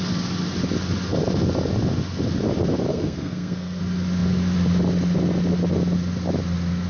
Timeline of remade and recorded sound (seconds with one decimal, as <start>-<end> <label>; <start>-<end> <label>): 0.0-2.9 recorded; 2.9-3.8 remade; 3.8-6.9 recorded